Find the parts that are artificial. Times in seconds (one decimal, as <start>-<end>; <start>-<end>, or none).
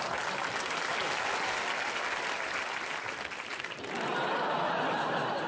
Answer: none